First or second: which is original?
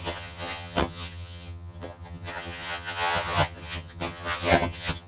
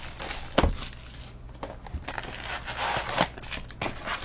second